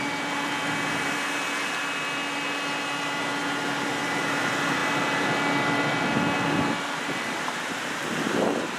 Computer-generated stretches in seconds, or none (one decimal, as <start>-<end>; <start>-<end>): none